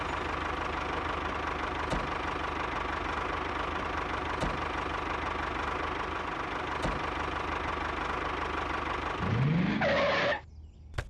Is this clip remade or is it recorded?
recorded